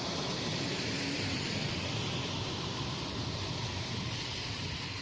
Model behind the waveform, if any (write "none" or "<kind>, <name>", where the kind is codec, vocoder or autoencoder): vocoder, BigVGAN v2